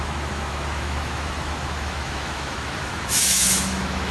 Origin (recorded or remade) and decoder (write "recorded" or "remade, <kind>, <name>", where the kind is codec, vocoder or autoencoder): remade, autoencoder, DAC-VAE